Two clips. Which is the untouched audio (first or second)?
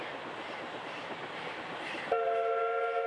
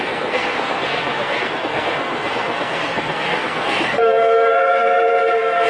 first